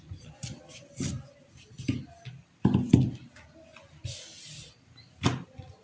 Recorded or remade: recorded